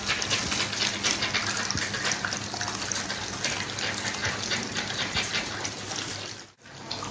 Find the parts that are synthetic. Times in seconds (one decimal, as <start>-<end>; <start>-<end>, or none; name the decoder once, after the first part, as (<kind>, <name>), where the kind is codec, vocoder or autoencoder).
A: 4.2-5.5 (vocoder, BigVGAN v2)